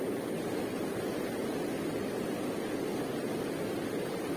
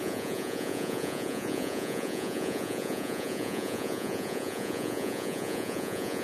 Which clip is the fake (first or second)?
second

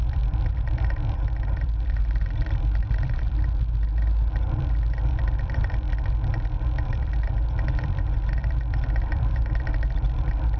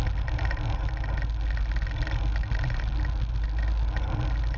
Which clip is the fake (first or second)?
first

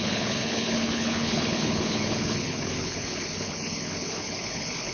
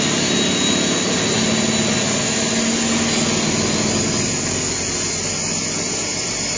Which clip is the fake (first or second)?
first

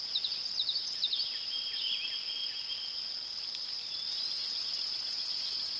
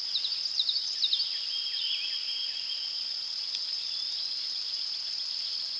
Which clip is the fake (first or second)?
second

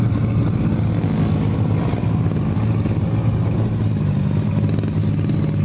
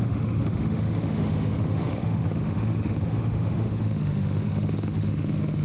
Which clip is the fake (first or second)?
second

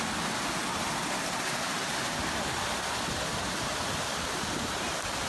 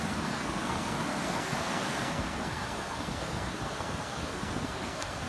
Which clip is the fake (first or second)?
second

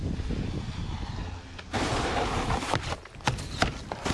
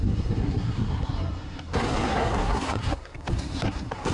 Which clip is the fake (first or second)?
second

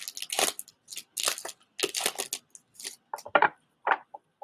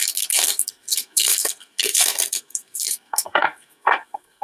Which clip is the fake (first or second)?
second